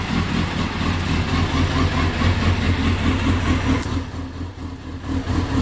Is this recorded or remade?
recorded